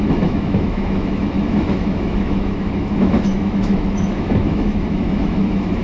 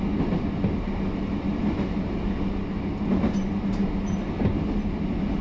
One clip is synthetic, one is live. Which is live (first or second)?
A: second